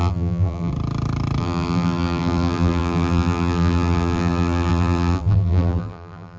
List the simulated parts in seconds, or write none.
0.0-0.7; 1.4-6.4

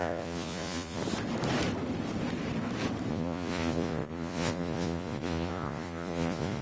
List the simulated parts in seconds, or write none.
0.0-1.0; 3.1-6.6